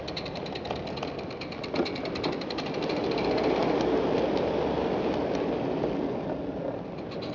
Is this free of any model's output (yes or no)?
yes